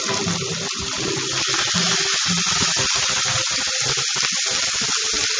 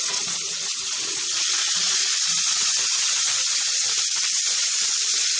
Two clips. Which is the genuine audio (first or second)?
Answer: first